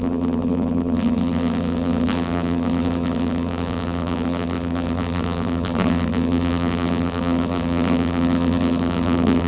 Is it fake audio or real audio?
fake